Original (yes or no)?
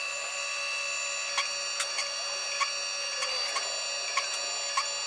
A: yes